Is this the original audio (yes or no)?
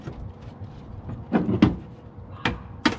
yes